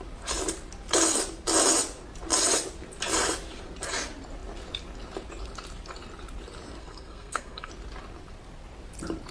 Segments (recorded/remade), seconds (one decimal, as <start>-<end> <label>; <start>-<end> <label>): 0.0-6.8 recorded; 6.8-7.7 remade; 7.7-9.3 recorded